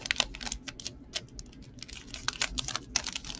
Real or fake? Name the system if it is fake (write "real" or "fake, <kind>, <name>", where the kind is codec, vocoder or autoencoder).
real